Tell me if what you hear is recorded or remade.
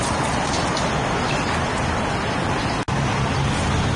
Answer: recorded